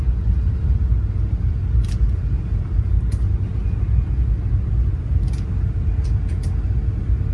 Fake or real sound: real